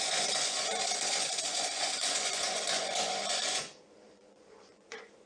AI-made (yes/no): yes